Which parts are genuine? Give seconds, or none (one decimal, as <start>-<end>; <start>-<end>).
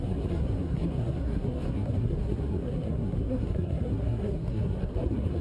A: none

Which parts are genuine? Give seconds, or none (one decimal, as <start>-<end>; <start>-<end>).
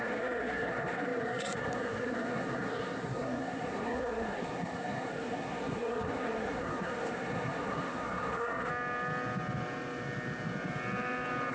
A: 8.7-11.5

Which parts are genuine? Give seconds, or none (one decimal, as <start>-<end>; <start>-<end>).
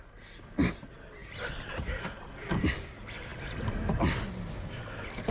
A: 0.0-5.3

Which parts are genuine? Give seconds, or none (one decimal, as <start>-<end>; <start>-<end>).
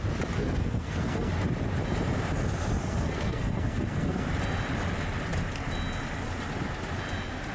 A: 0.0-0.4; 1.3-2.8; 4.3-7.5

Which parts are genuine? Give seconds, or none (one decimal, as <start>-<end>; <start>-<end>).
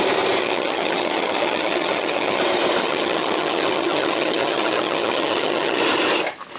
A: 0.0-0.4; 2.4-2.8; 5.8-6.6